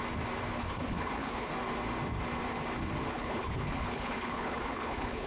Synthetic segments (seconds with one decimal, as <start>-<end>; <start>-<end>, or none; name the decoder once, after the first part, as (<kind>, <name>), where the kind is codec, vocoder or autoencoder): 0.6-1.5 (codec, HILCodec); 3.1-5.3